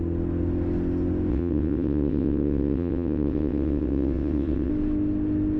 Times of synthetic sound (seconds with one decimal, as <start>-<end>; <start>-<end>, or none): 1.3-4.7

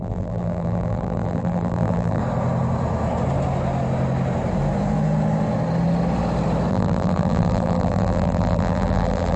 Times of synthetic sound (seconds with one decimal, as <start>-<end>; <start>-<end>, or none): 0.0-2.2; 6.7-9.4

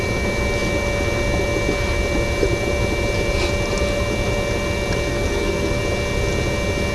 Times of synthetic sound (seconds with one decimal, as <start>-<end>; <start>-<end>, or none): 5.1-5.8